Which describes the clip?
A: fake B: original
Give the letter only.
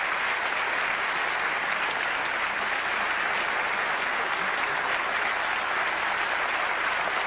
B